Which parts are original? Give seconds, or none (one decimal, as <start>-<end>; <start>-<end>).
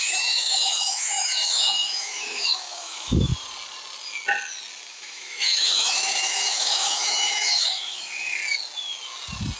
3.3-4.9; 8.4-9.6